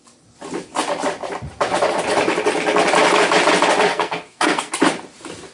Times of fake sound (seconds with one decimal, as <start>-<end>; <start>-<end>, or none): 3.9-4.7